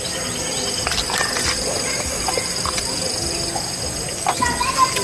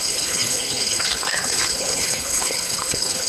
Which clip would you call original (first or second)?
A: first